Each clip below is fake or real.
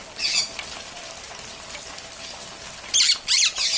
real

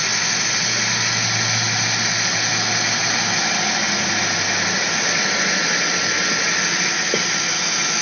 real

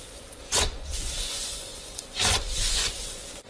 fake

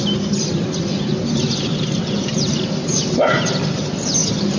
real